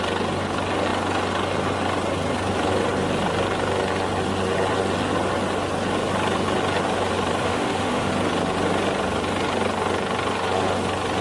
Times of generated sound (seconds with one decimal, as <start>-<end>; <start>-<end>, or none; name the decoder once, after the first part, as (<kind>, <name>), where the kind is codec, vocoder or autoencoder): 7.4-8.1 (autoencoder, DAC-VAE)